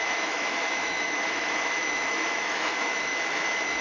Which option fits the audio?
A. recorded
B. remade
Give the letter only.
B